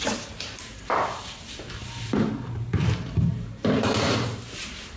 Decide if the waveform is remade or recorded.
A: remade